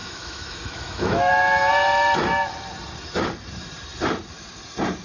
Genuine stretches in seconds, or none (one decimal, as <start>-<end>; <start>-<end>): 1.3-5.0

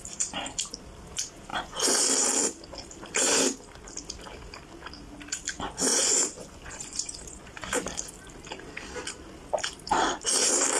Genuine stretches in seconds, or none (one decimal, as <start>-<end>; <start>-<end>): 0.0-1.5; 2.0-5.9; 7.7-10.8

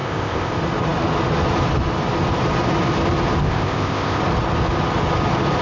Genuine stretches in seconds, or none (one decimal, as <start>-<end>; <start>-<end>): 0.5-3.4; 4.2-5.6

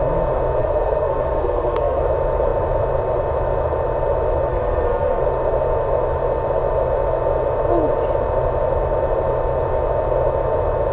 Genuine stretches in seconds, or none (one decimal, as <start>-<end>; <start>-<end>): 0.0-0.6; 2.0-4.5; 5.2-10.9

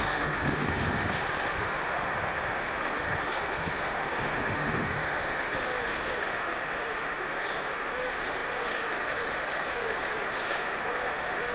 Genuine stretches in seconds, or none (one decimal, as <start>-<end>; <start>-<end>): none

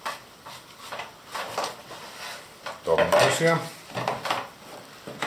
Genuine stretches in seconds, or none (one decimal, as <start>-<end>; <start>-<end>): none

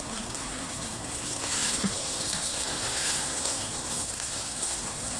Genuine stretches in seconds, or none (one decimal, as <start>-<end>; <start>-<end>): none